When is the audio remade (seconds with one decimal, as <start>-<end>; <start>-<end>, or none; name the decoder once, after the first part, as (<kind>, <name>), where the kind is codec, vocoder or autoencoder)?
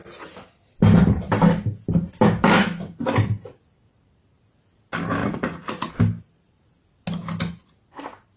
5.2-5.9 (vocoder, Vocos)